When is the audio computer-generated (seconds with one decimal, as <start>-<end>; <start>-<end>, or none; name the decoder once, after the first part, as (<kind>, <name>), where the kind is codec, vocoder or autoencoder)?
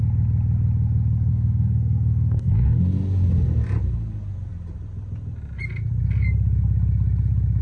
1.3-2.8 (codec, SNAC)